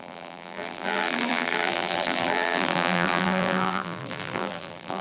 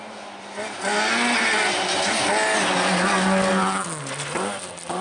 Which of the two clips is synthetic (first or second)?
first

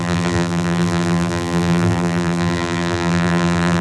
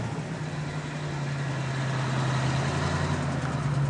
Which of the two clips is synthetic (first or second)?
first